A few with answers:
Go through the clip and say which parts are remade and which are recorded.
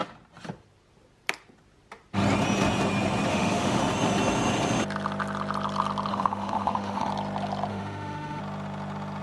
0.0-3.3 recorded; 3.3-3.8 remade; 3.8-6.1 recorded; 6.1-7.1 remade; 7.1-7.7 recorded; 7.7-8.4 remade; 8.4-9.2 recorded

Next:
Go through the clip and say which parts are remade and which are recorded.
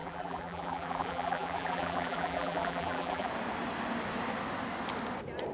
0.0-3.3 remade; 3.3-5.5 recorded